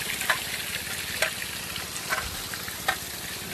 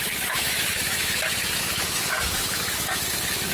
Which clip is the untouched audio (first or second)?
first